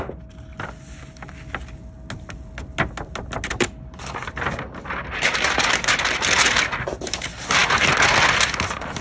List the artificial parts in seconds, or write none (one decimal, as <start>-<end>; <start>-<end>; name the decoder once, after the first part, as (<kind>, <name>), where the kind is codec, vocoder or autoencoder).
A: none